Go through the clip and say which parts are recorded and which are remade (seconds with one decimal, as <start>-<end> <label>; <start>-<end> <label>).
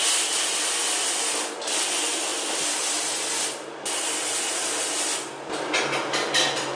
0.0-6.8 recorded